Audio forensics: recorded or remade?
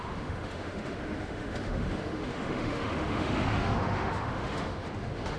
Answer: remade